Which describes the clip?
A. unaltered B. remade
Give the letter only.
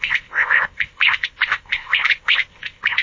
B